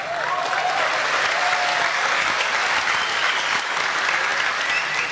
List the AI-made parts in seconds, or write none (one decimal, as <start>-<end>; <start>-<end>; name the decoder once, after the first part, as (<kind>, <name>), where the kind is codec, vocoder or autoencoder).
1.7-2.6 (codec, DAC); 3.1-3.8